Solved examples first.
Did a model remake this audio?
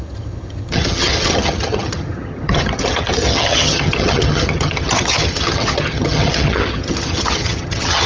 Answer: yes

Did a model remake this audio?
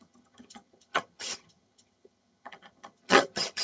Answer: yes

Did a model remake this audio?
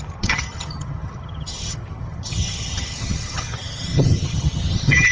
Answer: yes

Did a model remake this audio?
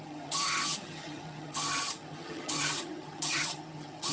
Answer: yes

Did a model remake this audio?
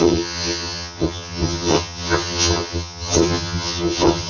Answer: yes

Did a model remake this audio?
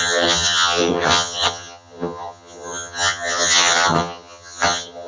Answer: yes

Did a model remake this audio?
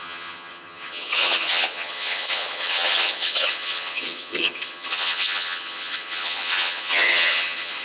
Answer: yes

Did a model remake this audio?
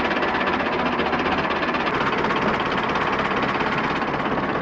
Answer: no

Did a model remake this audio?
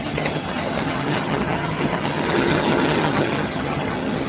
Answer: yes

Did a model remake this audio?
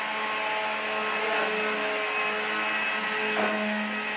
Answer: no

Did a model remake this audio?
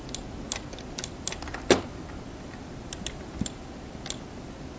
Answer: no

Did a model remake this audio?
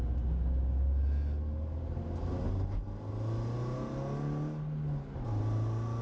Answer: no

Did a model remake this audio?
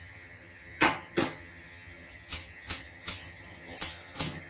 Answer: yes